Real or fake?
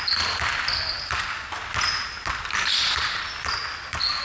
real